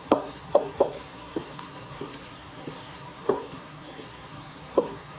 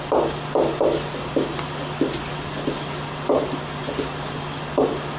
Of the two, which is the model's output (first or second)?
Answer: first